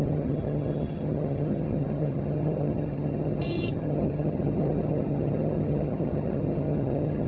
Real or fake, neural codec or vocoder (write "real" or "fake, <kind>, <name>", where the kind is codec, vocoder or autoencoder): fake, vocoder, HiFi-GAN